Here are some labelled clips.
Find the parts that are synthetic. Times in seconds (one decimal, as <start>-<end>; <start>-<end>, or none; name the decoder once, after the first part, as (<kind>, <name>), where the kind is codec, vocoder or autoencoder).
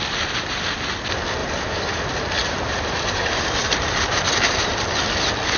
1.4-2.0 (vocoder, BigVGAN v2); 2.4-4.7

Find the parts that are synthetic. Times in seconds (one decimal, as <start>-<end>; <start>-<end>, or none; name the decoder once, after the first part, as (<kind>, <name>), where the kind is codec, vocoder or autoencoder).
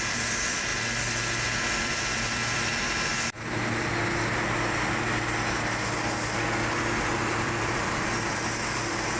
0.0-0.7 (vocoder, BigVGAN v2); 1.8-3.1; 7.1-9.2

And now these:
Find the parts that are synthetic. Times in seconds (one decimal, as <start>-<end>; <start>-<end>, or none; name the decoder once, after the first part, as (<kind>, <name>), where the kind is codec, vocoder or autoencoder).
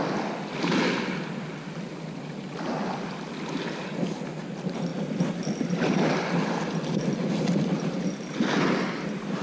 none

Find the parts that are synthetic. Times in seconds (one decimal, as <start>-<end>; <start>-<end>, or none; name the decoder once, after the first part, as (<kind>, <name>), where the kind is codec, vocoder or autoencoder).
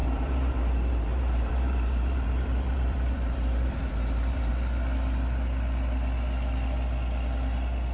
0.0-4.5 (vocoder, BigVGAN v2)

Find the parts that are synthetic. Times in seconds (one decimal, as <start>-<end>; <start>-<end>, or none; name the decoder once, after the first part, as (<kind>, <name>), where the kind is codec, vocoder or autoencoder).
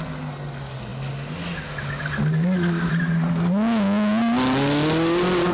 none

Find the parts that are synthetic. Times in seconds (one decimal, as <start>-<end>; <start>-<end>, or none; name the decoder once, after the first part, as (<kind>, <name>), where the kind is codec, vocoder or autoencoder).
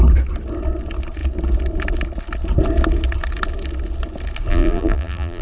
4.5-5.4 (vocoder, BigVGAN v2)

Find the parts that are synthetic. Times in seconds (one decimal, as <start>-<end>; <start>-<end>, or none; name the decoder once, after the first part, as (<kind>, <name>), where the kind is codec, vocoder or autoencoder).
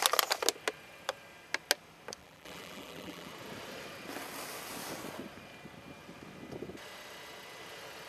2.2-3.3 (vocoder, BigVGAN v2)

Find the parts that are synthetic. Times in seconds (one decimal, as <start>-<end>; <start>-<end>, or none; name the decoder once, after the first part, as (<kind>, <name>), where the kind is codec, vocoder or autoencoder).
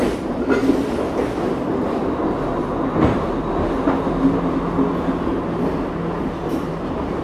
6.4-7.2 (vocoder, BigVGAN v2)